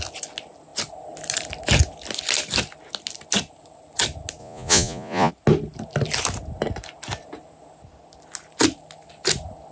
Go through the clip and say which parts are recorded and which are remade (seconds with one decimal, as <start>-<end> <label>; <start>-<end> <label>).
0.0-4.4 recorded; 4.4-5.3 remade; 5.3-9.7 recorded